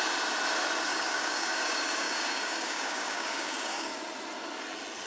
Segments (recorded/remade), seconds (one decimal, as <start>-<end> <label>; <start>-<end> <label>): 0.0-0.9 recorded; 0.9-4.0 remade; 4.0-5.1 recorded